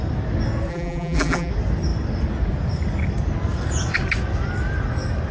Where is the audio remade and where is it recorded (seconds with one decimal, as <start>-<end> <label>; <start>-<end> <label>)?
0.0-0.7 recorded; 0.7-1.5 remade; 1.5-5.3 recorded